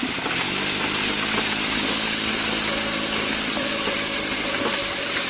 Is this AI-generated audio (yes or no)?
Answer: no